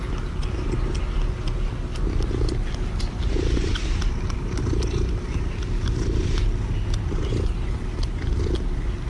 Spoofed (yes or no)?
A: no